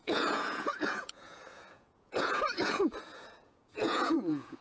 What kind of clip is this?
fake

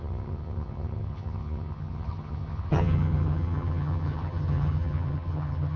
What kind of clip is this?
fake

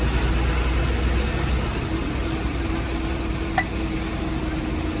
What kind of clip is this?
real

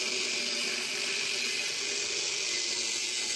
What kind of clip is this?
real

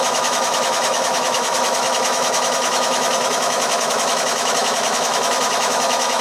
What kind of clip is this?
fake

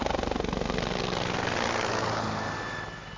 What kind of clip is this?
real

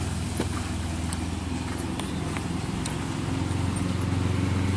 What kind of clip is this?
real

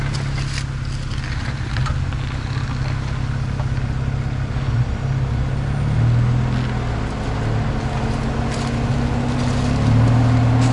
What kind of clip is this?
real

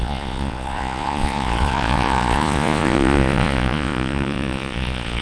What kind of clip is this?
fake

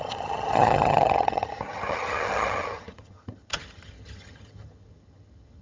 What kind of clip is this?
fake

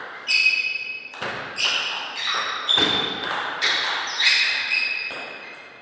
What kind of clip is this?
real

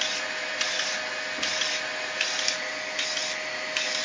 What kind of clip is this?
real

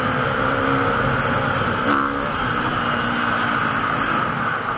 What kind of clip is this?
real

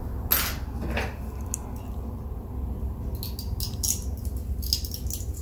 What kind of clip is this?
real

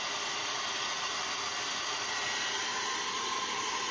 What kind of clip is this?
fake